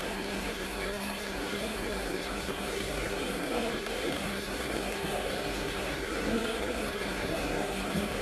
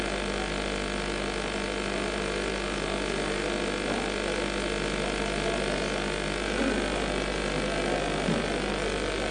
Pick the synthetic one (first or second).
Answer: first